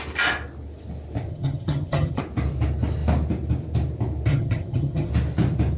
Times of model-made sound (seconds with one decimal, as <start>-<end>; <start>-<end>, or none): 1.3-2.2; 4.3-5.1

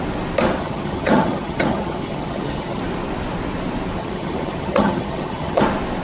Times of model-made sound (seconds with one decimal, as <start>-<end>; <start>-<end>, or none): 0.6-2.8; 4.0-5.6

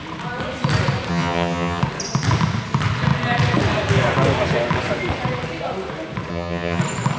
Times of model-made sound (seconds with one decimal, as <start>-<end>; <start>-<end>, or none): 1.1-1.8; 6.3-6.8

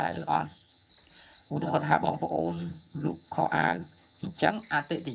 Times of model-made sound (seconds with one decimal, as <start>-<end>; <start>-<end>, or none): 0.0-0.9; 1.4-4.5

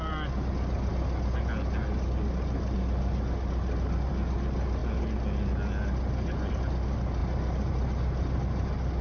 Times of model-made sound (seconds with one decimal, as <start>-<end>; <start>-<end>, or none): none